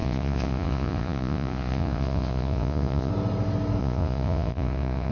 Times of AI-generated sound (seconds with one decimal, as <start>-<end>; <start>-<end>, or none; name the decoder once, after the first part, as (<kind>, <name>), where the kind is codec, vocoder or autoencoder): 0.0-3.1 (vocoder, Vocos); 3.8-5.1